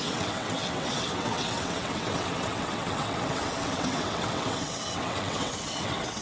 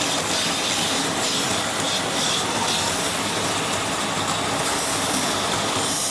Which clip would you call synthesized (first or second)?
first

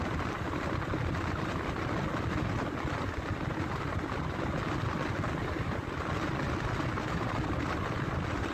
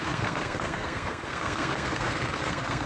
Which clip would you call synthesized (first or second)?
second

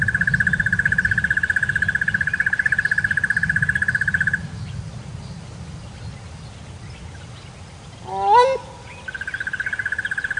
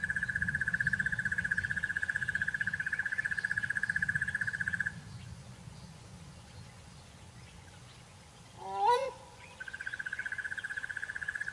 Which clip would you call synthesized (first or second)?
second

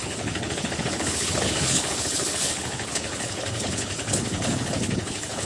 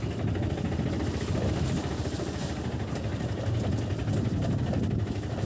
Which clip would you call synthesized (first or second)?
first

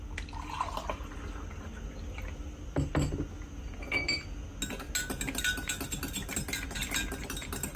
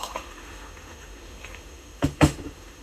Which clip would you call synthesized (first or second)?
second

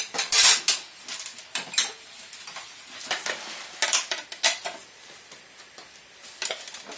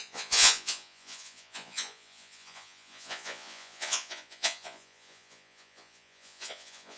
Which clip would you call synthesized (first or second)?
second